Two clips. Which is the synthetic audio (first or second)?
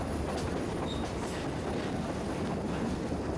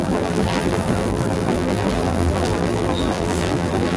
second